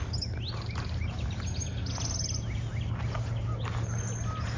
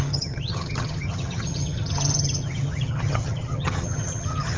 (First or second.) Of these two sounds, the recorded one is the first